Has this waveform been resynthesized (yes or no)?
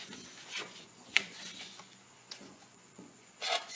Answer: yes